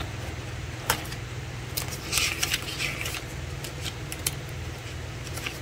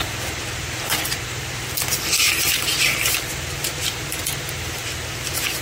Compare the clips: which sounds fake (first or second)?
second